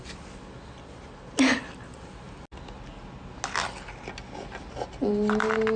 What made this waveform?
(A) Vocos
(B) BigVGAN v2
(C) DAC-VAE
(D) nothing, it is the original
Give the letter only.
D